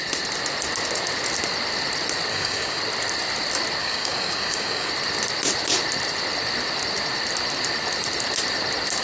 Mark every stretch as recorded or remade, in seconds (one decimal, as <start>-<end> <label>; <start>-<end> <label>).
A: 0.0-2.3 recorded; 2.3-2.8 remade; 2.8-3.8 recorded; 3.8-4.9 remade; 4.9-9.0 recorded